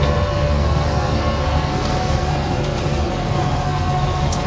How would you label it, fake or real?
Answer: fake